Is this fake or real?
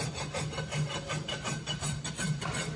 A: real